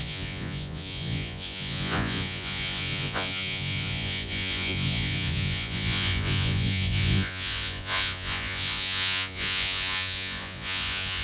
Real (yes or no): no